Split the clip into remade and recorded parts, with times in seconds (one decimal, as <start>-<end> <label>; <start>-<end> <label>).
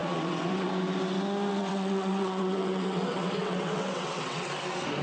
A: 0.0-0.7 remade; 0.7-1.5 recorded; 1.5-4.5 remade; 4.5-5.0 recorded